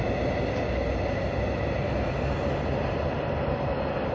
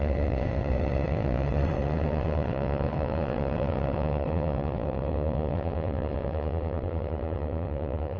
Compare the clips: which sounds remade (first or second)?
second